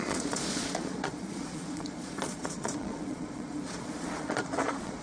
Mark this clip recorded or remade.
remade